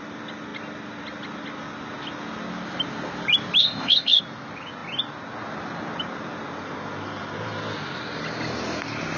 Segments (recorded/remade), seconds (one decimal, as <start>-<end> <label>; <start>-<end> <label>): 0.0-3.6 recorded; 3.6-4.2 remade; 4.2-9.2 recorded